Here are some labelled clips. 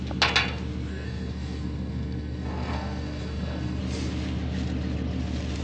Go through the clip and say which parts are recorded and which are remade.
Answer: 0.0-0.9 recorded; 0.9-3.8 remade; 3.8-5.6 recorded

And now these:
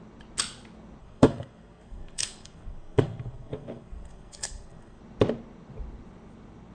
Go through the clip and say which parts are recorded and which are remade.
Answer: 0.0-1.0 recorded; 1.0-5.0 remade; 5.0-6.7 recorded

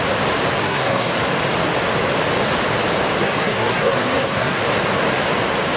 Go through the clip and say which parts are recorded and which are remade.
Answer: 0.0-0.6 recorded; 0.6-1.1 remade; 1.1-3.2 recorded; 3.2-4.6 remade; 4.6-5.8 recorded